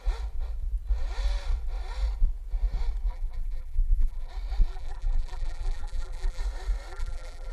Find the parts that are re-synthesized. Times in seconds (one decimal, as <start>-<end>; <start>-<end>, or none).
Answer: 3.1-4.3; 4.7-6.4; 6.9-7.5